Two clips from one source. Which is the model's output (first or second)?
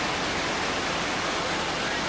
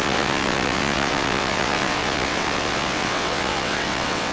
second